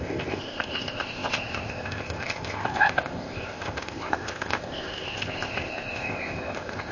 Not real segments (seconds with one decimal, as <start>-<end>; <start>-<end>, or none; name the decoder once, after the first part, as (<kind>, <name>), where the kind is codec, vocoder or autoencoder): 0.0-6.9 (codec, ZipCodec)